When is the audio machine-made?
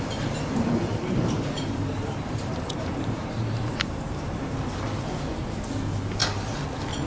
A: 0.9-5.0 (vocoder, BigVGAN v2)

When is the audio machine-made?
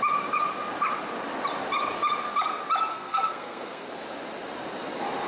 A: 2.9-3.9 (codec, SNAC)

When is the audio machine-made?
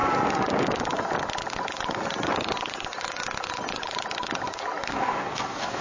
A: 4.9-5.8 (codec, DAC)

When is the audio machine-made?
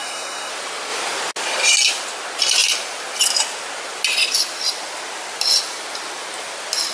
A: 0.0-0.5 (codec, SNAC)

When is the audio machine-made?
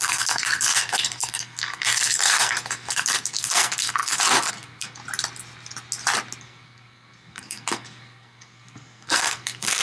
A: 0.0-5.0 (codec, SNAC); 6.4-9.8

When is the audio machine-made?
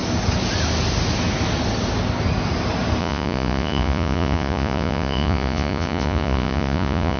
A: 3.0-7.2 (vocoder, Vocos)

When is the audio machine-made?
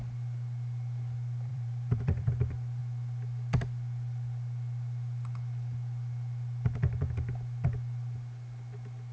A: 1.5-2.3 (vocoder, BigVGAN v2)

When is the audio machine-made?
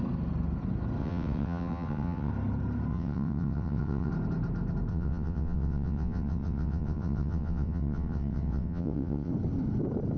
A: 1.0-2.3 (vocoder, WaveNeXt); 2.9-4.1; 4.9-9.3